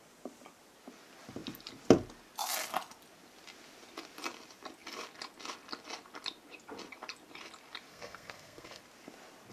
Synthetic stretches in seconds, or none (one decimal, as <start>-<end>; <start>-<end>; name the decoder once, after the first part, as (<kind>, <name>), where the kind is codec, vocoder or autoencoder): 7.9-8.8 (codec, SNAC)